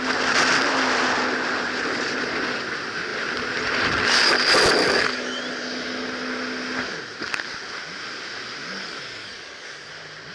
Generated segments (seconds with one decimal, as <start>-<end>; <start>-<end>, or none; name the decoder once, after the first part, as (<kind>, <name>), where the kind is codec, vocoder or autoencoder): 4.8-5.4 (codec, DAC); 8.6-9.9